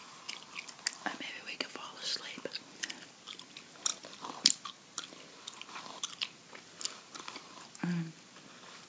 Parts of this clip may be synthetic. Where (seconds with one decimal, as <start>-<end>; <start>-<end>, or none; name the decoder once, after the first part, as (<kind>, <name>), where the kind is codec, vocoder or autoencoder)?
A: 3.9-5.8 (vocoder, BigVGAN v2)